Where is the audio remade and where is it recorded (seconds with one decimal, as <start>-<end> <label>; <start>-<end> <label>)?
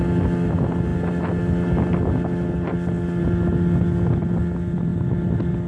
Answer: 0.0-5.7 recorded